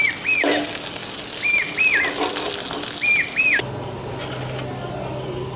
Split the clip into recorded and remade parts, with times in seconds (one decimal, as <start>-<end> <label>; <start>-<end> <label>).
0.0-5.6 recorded